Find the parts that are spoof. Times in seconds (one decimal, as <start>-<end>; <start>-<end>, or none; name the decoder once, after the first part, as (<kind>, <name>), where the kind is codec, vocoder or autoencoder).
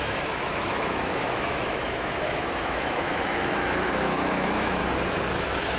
0.0-4.8 (autoencoder, DAC-VAE); 5.3-5.8